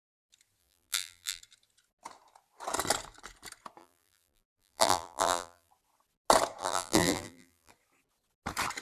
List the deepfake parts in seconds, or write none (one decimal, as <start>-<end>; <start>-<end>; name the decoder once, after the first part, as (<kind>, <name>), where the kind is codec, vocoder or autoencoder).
0.6-1.4 (vocoder, BigVGAN v2); 3.8-5.7; 6.6-7.7